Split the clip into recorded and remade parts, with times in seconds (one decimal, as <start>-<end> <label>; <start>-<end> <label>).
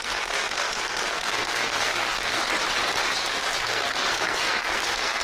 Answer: 0.0-2.4 remade; 2.4-3.2 recorded; 3.2-5.2 remade